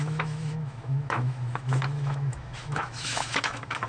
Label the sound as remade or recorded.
remade